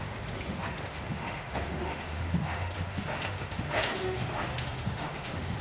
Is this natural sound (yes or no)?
no